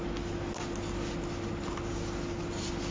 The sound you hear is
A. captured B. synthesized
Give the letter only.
A